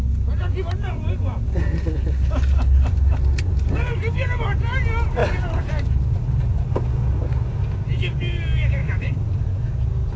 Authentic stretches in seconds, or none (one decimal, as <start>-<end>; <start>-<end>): 0.0-5.2; 5.8-8.8; 9.4-10.2